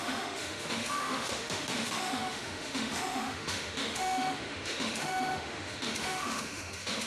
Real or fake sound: fake